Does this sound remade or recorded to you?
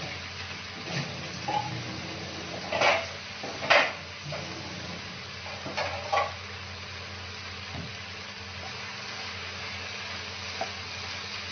recorded